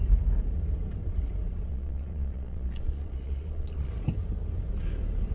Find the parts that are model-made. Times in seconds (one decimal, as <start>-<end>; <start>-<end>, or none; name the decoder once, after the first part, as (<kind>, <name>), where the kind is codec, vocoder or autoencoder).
1.7-3.9 (vocoder, Vocos)